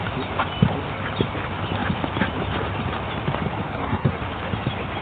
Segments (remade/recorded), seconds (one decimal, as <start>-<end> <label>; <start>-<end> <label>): 0.0-3.7 recorded; 3.7-4.2 remade; 4.2-5.0 recorded